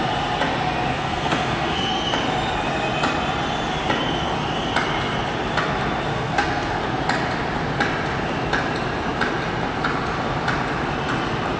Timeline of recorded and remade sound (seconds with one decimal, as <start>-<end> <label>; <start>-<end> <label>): 0.0-0.9 recorded; 0.9-2.1 remade; 2.1-6.1 recorded; 6.1-6.8 remade; 6.8-11.6 recorded